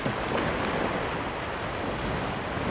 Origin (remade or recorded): recorded